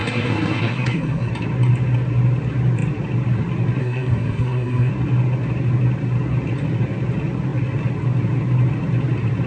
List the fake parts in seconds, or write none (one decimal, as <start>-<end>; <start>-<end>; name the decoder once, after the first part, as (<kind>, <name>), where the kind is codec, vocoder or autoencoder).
0.0-1.3 (codec, SNAC); 3.8-4.9